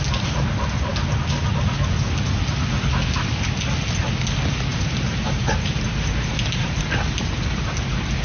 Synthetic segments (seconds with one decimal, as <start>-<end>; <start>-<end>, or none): 4.7-7.0